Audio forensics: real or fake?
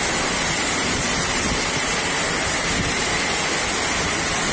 real